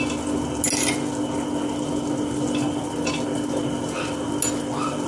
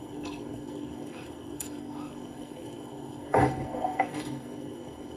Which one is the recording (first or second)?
first